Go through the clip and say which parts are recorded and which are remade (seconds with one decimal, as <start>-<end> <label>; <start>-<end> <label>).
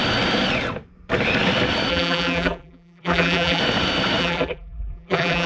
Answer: 0.0-1.9 recorded; 1.9-3.6 remade; 3.6-4.2 recorded; 4.2-5.5 remade